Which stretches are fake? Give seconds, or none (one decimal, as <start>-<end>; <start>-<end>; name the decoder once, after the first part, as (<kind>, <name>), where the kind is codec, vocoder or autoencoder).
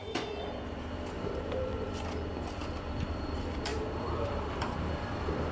0.8-1.7 (vocoder, BigVGAN v2); 3.1-5.5